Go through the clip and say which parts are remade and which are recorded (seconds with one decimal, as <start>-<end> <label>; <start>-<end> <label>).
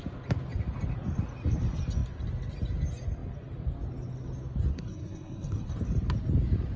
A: 0.0-4.7 recorded; 4.7-5.7 remade; 5.7-6.8 recorded